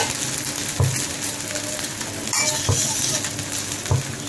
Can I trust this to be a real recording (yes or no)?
yes